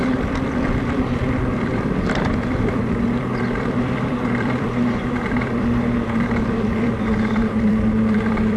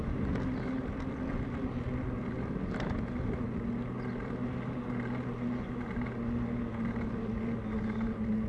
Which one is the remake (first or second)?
first